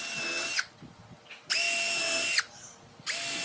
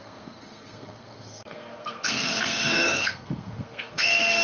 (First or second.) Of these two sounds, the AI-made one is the second